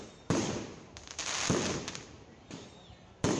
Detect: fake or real real